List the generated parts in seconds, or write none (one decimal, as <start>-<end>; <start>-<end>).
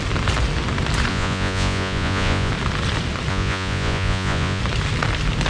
1.1-2.5; 3.3-4.6